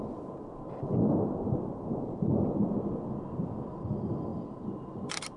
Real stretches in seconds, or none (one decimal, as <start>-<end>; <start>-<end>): 0.0-5.4